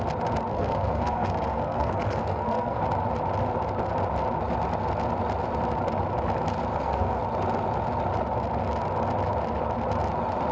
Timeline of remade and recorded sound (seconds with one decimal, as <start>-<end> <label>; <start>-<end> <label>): 0.0-0.5 recorded; 0.5-2.8 remade; 2.8-6.7 recorded; 6.7-7.2 remade; 7.2-10.5 recorded